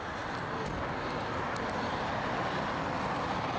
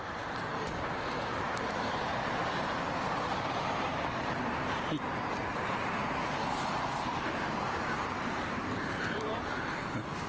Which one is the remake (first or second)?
second